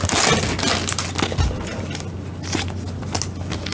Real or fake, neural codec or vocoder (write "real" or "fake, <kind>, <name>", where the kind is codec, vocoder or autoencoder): real